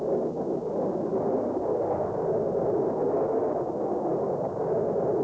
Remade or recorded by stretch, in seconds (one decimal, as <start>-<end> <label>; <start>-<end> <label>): 0.0-5.2 recorded